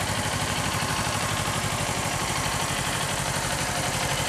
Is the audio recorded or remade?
remade